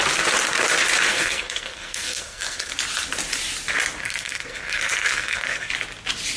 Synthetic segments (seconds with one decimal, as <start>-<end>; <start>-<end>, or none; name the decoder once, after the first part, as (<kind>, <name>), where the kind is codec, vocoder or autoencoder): 1.1-2.7 (codec, SNAC); 4.0-5.7